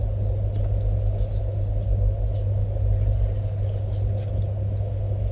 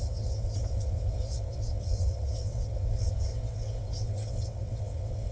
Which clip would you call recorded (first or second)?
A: first